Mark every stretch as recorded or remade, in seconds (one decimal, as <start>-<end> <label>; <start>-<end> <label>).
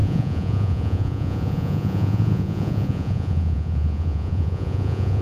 0.0-5.2 remade